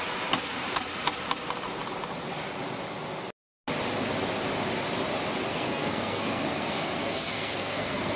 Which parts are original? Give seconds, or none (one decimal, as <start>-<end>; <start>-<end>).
0.0-5.5